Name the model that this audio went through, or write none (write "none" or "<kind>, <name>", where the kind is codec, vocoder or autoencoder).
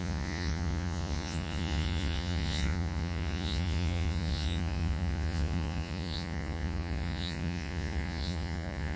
vocoder, Vocos